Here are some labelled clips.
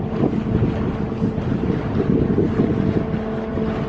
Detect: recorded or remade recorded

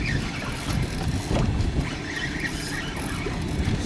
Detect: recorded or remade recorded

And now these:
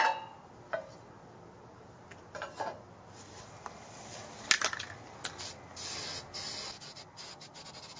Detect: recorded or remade recorded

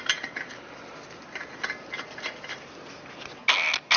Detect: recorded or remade recorded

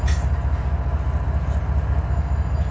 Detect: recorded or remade recorded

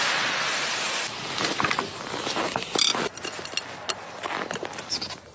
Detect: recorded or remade recorded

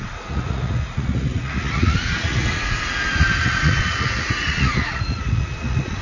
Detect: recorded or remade remade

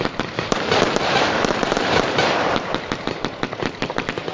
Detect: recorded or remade recorded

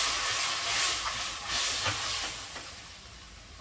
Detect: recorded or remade recorded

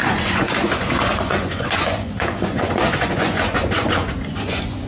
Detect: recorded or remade remade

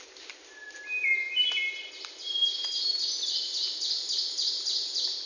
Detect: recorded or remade recorded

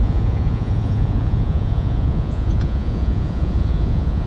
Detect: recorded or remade remade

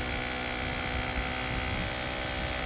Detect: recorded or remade recorded